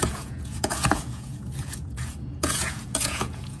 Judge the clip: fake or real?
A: fake